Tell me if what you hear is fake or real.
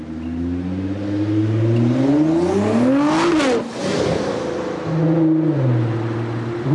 real